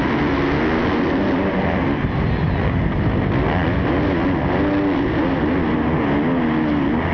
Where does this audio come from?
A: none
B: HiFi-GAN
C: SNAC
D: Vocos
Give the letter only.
A